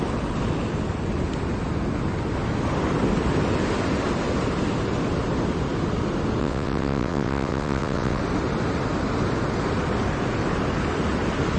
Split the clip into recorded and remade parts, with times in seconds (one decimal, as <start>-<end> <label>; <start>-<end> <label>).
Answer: 0.0-6.4 recorded; 6.4-8.2 remade; 8.2-11.6 recorded